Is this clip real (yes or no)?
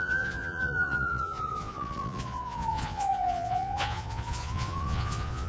no